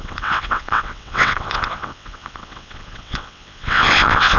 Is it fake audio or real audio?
fake